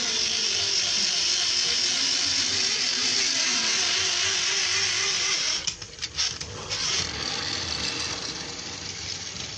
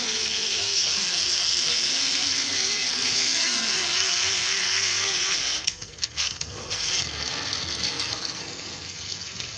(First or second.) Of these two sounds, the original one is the first